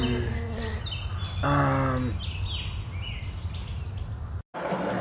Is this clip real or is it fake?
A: real